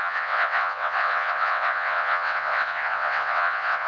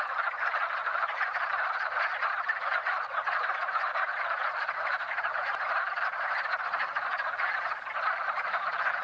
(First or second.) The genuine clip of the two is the second